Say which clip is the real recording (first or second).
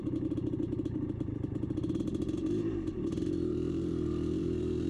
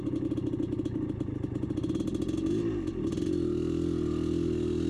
second